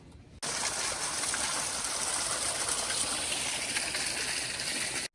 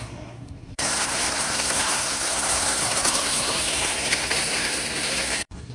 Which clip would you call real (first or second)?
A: first